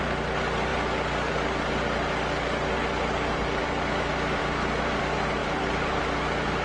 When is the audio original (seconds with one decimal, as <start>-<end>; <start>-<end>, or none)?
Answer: 0.0-5.4; 6.0-6.6